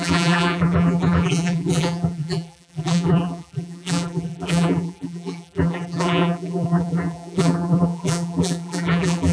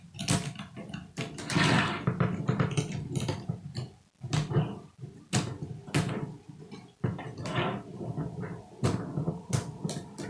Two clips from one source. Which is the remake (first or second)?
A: first